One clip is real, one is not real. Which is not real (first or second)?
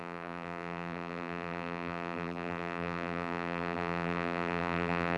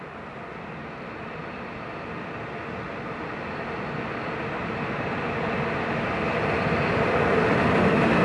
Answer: first